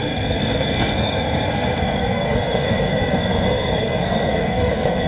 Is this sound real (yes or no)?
no